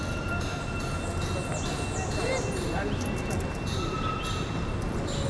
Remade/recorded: recorded